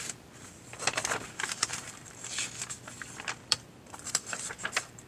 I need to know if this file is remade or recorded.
remade